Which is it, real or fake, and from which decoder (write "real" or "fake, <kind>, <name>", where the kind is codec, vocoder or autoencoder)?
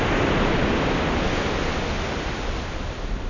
real